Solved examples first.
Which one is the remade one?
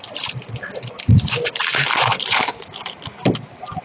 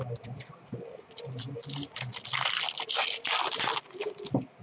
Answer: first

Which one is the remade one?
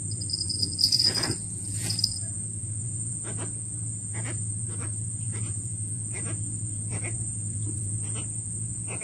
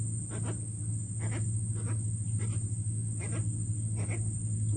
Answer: first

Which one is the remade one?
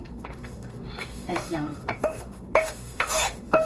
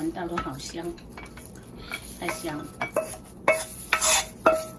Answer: first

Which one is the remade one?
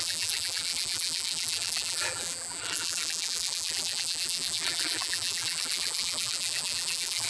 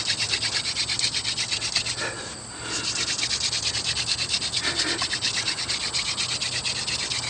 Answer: first